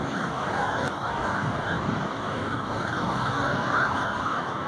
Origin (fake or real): fake